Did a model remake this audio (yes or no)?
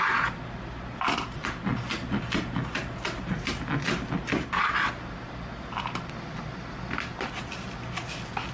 no